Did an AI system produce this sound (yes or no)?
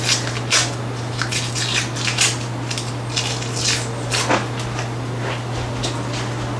no